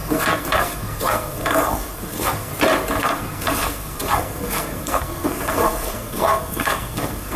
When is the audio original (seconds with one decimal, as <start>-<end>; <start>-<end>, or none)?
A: 2.5-3.0